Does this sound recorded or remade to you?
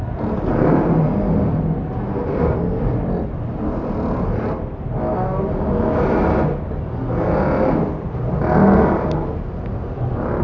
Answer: recorded